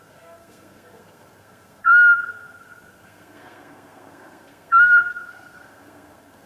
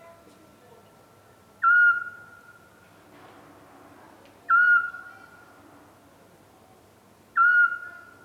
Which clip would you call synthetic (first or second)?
first